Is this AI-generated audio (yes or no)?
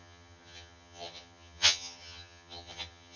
yes